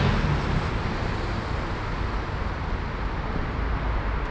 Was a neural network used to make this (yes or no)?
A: no